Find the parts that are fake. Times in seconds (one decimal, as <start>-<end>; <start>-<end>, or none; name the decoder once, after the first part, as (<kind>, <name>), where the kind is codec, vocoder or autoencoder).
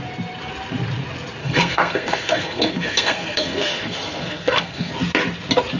1.4-4.9 (codec, SNAC)